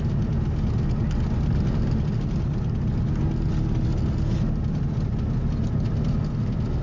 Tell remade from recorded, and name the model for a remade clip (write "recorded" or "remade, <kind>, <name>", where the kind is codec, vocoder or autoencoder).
recorded